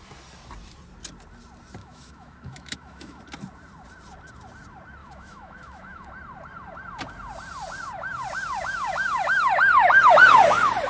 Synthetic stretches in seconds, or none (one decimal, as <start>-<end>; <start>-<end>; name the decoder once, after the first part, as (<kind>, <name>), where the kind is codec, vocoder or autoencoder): 1.8-3.2 (autoencoder, DAC-VAE); 5.0-6.1

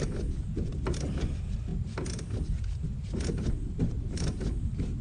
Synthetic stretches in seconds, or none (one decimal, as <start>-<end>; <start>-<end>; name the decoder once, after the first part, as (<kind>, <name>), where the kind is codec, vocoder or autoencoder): none